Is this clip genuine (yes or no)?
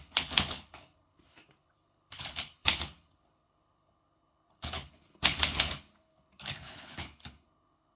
no